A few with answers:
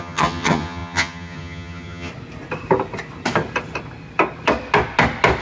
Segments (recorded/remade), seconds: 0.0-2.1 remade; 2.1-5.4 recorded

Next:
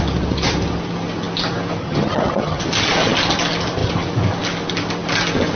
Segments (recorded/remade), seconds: 0.0-1.8 recorded; 1.8-2.6 remade; 2.6-5.5 recorded